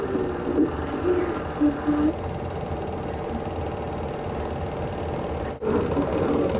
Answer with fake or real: real